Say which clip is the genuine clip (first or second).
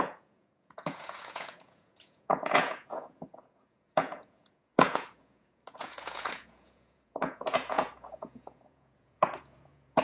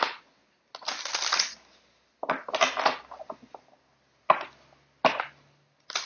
second